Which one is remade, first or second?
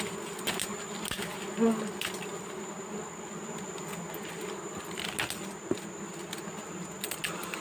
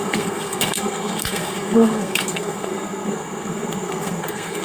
second